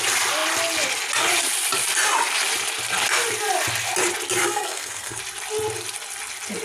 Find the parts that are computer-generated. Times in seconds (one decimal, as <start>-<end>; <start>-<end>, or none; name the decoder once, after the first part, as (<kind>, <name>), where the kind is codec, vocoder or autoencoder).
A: 4.4-5.2 (codec, SNAC)